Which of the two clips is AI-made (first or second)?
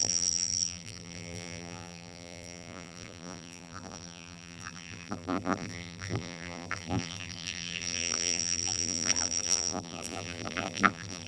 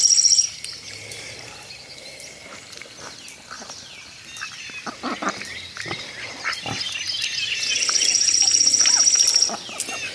first